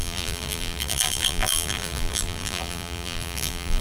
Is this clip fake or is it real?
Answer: fake